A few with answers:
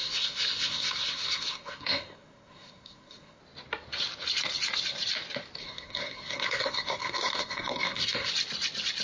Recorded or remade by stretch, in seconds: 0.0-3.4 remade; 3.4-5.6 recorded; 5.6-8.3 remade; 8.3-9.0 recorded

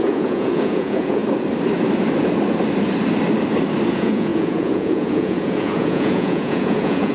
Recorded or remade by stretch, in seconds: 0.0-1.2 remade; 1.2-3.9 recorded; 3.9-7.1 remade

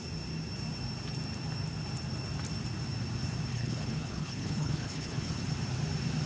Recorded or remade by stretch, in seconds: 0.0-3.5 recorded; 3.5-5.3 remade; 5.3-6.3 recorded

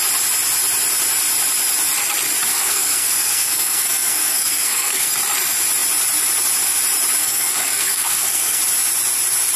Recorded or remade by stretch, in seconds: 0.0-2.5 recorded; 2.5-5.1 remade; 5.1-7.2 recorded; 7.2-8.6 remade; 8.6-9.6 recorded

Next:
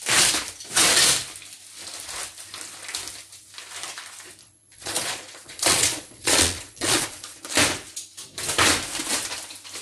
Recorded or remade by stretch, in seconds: 0.0-4.4 recorded; 4.4-7.4 remade; 7.4-9.8 recorded

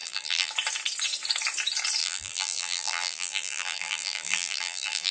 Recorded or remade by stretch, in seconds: 0.0-0.5 remade; 0.5-2.0 recorded; 2.0-5.1 remade

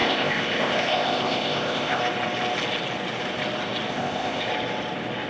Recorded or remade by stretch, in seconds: 0.0-2.0 remade; 2.0-3.9 recorded; 3.9-4.5 remade; 4.5-5.3 recorded

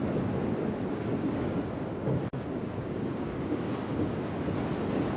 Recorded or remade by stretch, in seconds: 0.0-1.1 recorded; 1.1-4.1 remade; 4.1-5.2 recorded